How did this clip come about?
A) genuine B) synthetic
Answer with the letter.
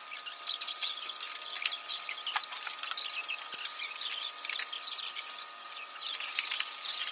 A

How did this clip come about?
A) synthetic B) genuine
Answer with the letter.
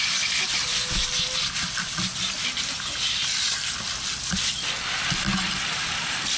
B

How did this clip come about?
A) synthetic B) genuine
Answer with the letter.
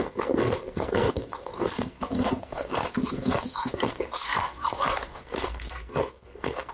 A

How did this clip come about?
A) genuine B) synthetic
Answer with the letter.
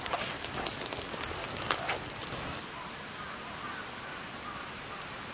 A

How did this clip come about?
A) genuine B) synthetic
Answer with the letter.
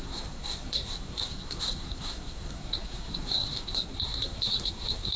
B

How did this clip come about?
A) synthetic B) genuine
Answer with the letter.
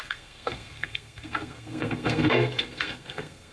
A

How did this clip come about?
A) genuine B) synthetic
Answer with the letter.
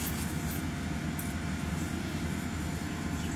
A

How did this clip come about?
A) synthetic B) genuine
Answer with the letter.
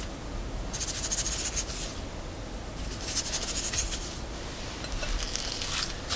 B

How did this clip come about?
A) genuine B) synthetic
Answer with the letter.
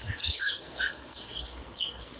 B